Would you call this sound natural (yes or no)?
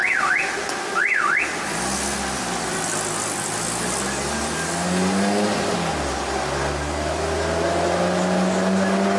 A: yes